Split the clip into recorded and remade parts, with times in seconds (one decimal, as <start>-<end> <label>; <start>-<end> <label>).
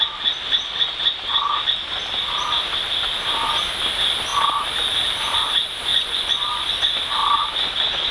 0.0-5.9 recorded; 5.9-6.7 remade; 6.7-8.1 recorded